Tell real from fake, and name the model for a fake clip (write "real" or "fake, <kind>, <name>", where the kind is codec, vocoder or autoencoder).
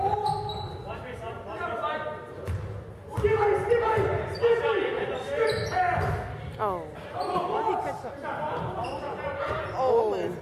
real